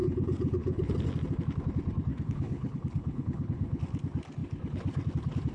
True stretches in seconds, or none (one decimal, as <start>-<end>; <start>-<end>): 0.9-2.1; 3.8-5.5